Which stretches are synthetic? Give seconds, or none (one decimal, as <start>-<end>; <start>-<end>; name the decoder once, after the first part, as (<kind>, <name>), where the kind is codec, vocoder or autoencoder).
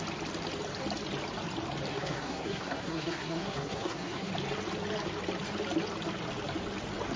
1.9-4.3 (codec, SNAC)